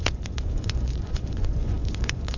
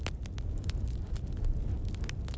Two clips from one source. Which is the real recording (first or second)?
second